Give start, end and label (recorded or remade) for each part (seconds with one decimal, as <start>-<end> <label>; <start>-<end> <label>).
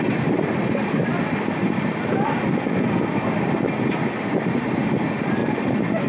0.0-6.1 recorded